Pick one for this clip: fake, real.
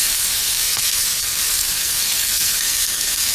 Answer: fake